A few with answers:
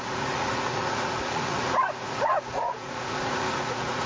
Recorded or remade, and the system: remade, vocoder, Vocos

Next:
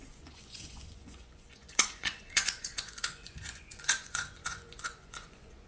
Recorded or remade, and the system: remade, vocoder, Vocos